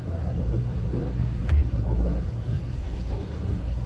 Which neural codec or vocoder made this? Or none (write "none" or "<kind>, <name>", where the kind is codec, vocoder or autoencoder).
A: codec, SNAC